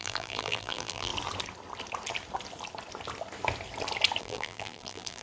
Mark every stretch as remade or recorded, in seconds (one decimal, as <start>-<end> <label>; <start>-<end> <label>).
0.0-1.1 remade; 1.1-4.2 recorded; 4.2-5.2 remade